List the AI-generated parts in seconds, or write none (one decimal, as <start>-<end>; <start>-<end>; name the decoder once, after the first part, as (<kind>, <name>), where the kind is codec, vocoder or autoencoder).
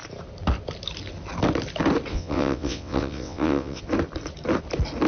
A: 2.1-3.8 (vocoder, WaveNeXt)